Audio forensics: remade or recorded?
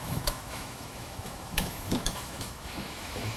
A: remade